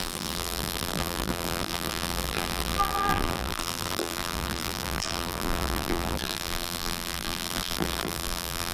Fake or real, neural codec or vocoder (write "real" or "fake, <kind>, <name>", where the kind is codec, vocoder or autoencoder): fake, vocoder, BigVGAN v2